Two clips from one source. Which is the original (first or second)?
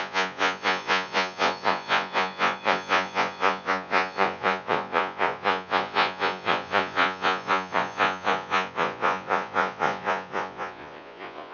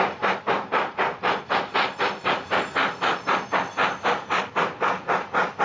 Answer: second